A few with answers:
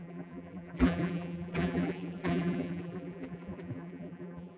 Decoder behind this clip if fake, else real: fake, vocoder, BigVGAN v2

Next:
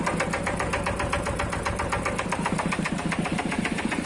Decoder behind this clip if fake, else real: fake, vocoder, BigVGAN v2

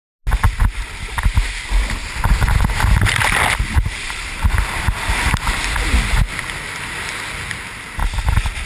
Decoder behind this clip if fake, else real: real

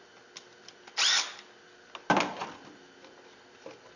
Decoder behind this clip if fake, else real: real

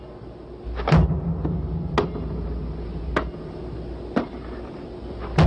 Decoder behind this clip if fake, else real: real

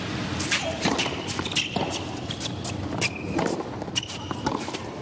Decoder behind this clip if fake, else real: fake, vocoder, BigVGAN v2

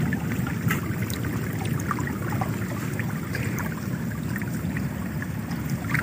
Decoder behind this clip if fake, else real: real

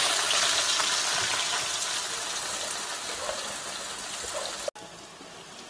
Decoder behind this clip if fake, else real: real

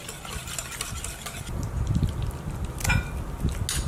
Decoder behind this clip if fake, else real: real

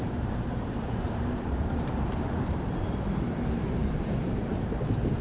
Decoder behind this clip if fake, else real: fake, vocoder, BigVGAN v2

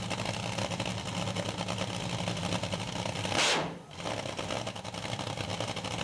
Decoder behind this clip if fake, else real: real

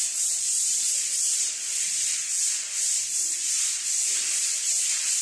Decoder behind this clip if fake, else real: fake, vocoder, BigVGAN v2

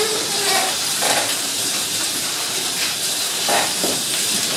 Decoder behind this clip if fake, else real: fake, vocoder, BigVGAN v2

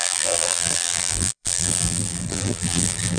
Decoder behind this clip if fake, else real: fake, vocoder, BigVGAN v2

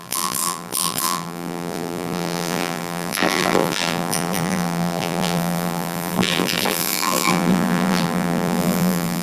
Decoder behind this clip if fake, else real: fake, vocoder, BigVGAN v2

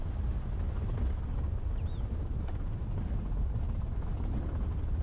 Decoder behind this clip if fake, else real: real